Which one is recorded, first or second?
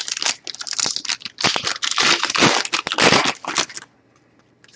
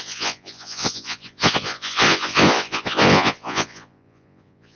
first